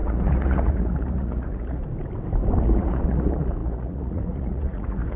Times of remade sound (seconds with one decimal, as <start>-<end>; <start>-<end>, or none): 0.0-1.8; 2.6-5.2

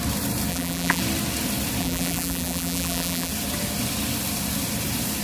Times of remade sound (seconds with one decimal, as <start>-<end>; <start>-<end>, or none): 0.5-1.0; 1.8-3.3

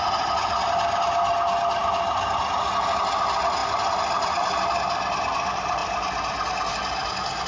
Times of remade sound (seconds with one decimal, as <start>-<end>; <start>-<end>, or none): none

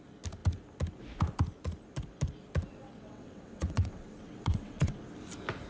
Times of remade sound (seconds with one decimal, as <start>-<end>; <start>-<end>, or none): 2.7-5.0

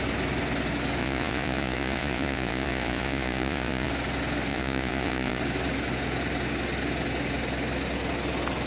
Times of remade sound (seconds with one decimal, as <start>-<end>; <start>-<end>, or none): 1.0-3.9; 4.5-5.4

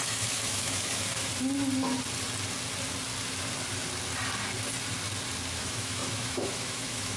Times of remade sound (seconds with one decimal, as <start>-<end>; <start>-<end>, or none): 0.0-1.3; 5.6-7.2